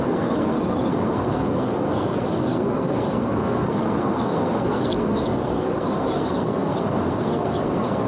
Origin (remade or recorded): remade